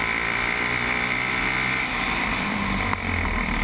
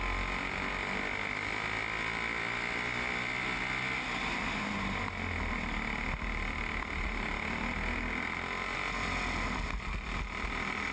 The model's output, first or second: first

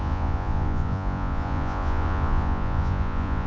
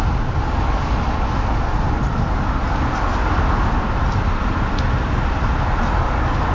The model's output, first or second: first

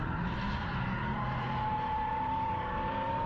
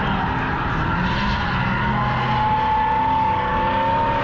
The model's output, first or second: first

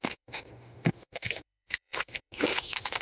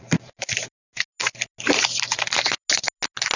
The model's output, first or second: first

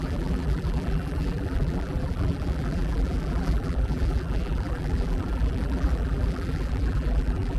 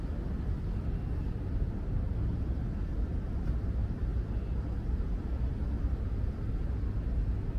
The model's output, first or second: first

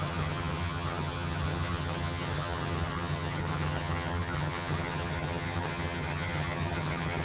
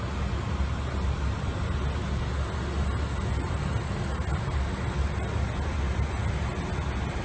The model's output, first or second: first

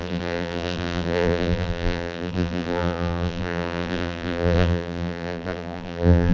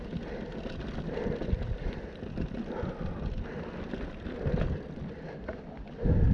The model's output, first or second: first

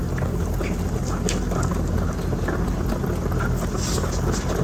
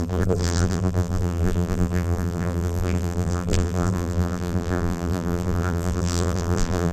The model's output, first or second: second